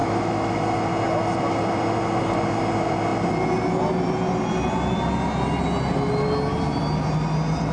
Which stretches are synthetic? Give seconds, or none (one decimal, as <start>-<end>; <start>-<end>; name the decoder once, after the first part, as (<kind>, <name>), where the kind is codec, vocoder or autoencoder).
0.0-0.6 (autoencoder, DAC-VAE)